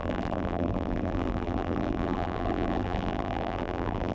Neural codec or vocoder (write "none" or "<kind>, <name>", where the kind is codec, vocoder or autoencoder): vocoder, BigVGAN v2